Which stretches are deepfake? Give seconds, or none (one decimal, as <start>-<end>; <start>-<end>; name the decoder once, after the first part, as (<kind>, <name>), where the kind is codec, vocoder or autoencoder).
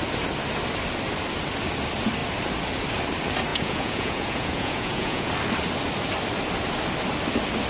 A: 3.5-5.3 (vocoder, Vocos)